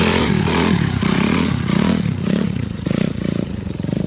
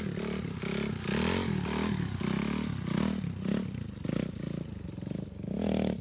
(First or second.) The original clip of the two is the second